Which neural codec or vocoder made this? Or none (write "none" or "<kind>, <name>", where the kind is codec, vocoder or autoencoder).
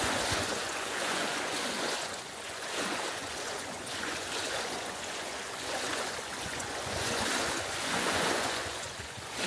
vocoder, Vocos